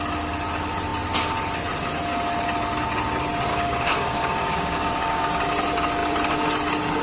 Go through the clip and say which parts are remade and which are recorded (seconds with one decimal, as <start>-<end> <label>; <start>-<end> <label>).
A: 0.0-3.5 recorded; 3.5-5.3 remade; 5.3-7.0 recorded